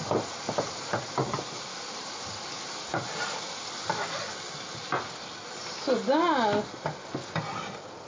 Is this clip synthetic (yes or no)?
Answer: no